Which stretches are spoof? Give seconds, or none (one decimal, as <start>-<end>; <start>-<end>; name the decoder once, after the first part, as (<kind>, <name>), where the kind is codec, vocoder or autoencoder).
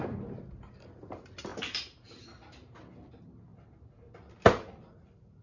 none